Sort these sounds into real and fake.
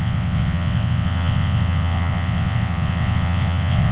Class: fake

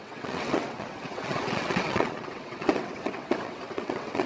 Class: fake